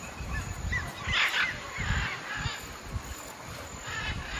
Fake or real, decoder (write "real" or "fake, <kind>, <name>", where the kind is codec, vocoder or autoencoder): real